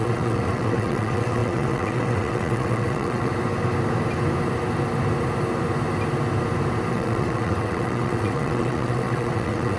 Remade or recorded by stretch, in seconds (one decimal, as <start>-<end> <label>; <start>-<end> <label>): 0.0-3.3 remade; 3.3-6.9 recorded; 6.9-9.8 remade